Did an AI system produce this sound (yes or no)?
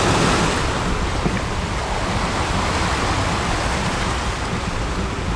no